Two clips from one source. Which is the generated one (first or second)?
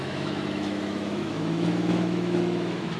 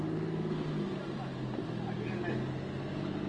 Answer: first